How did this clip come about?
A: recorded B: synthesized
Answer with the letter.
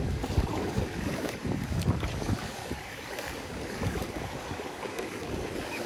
B